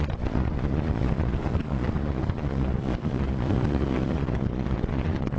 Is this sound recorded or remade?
remade